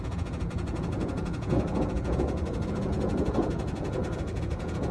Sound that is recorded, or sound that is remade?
remade